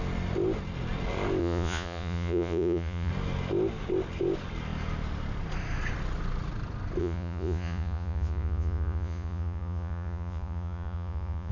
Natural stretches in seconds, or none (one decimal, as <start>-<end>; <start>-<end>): 0.0-1.4; 3.1-7.0